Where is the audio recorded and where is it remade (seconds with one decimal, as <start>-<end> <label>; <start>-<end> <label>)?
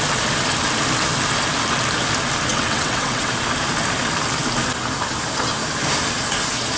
0.0-2.5 recorded; 2.5-3.3 remade; 3.3-6.8 recorded